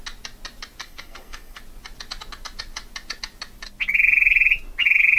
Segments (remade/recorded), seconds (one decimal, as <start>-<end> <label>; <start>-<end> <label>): 0.0-0.8 recorded; 0.8-1.6 remade; 1.6-5.2 recorded